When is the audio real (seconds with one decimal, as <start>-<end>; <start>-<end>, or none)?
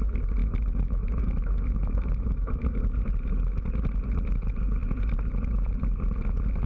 0.0-0.4; 2.8-6.7